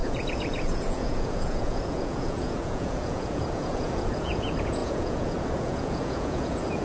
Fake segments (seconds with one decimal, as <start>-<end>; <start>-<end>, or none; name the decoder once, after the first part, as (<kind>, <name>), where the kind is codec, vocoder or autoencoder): 0.0-6.8 (vocoder, Vocos)